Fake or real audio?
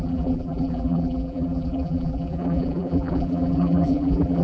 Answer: fake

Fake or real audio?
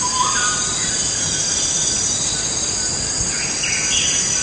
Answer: real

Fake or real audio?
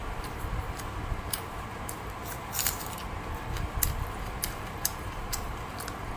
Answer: fake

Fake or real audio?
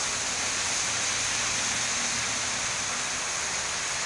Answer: real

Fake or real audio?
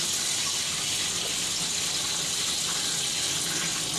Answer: real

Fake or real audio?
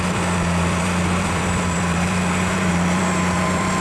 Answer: fake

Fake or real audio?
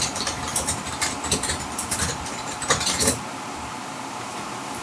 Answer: fake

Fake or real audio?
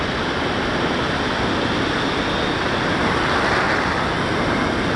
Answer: real